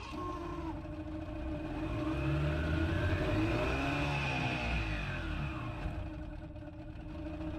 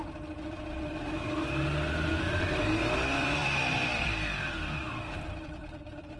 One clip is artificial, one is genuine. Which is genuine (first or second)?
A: first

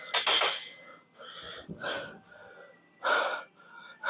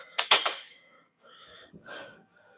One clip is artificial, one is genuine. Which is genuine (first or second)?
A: first